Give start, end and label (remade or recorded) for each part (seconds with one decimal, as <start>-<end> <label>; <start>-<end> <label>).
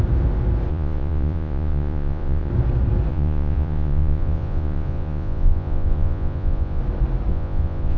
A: 0.0-0.7 recorded; 0.7-2.5 remade; 2.5-3.1 recorded; 3.1-6.8 remade; 6.8-7.3 recorded; 7.3-8.0 remade